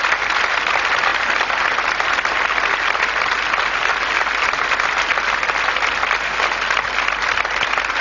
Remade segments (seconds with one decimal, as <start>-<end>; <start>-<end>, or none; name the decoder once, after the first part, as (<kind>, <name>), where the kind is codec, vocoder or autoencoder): none